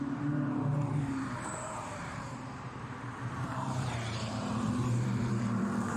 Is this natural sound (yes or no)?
no